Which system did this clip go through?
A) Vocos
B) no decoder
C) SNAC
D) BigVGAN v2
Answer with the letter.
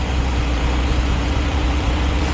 A